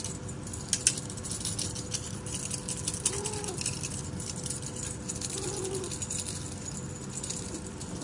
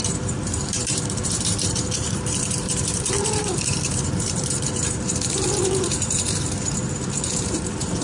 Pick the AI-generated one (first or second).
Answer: second